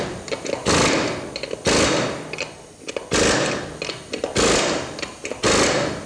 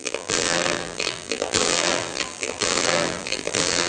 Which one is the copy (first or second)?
second